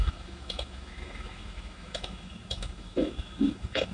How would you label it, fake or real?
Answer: fake